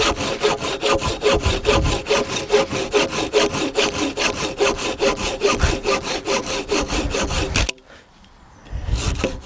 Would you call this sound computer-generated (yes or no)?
no